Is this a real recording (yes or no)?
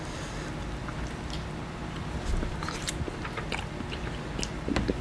yes